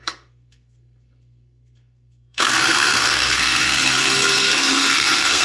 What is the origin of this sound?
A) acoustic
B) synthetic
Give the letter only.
B